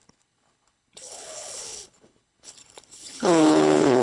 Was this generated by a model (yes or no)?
yes